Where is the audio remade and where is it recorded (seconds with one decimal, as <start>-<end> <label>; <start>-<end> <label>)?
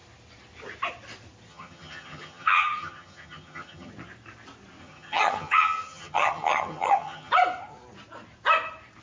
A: 0.0-1.5 recorded; 1.5-3.9 remade; 3.9-4.8 recorded; 4.8-7.3 remade; 7.3-9.0 recorded